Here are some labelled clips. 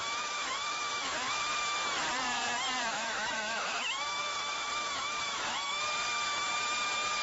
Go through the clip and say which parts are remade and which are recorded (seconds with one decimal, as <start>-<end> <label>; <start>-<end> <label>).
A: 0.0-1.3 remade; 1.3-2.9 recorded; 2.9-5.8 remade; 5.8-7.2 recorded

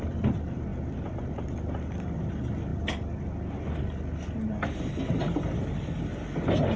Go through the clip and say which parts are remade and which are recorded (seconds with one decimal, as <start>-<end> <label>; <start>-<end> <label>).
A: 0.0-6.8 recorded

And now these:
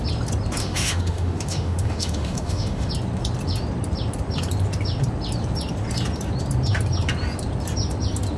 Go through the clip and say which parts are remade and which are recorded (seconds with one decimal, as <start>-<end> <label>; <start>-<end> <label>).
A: 0.0-0.6 recorded; 0.6-2.9 remade; 2.9-8.4 recorded

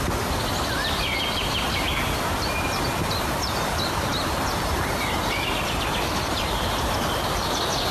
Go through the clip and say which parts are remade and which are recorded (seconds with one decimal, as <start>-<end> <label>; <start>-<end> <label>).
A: 0.0-7.9 recorded

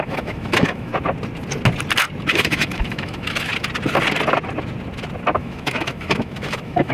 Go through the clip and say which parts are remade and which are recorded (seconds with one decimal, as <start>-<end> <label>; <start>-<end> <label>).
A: 0.0-0.9 remade; 0.9-2.3 recorded; 2.3-3.5 remade; 3.5-5.4 recorded; 5.4-6.9 remade

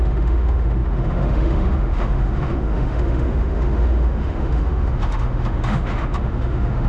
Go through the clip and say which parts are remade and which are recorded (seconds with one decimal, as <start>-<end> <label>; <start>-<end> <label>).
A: 0.0-6.9 remade

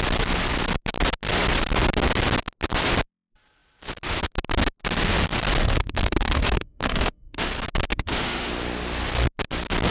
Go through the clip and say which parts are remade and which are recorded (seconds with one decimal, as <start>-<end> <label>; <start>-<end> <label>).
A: 0.0-5.6 recorded; 5.6-7.5 remade; 7.5-7.9 recorded; 7.9-8.5 remade; 8.5-9.9 recorded